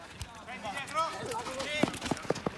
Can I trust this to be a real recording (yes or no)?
yes